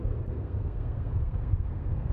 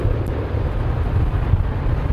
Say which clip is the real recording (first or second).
second